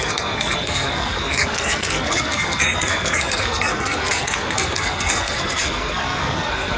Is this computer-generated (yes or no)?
yes